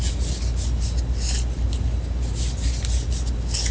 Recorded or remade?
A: recorded